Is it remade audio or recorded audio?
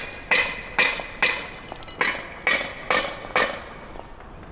recorded